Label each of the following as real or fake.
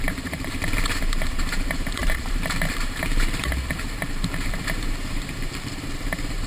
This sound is fake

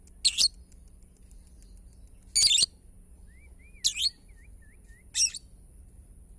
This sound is real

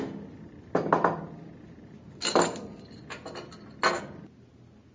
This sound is real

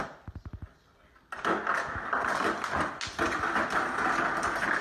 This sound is real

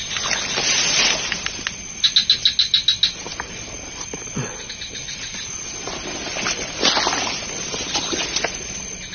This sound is real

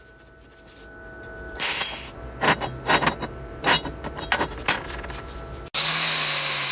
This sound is real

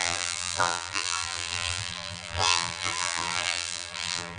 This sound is fake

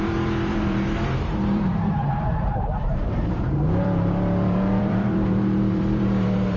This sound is fake